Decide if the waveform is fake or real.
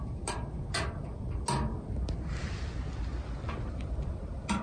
real